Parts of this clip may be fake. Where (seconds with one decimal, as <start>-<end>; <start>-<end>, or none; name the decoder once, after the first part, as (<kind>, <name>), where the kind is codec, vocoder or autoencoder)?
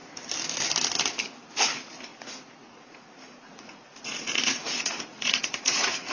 2.1-6.1 (vocoder, Vocos)